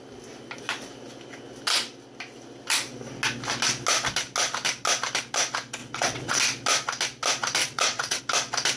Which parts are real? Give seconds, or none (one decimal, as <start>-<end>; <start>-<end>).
0.0-5.8; 6.4-7.6; 8.2-8.8